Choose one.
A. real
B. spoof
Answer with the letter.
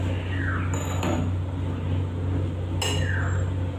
A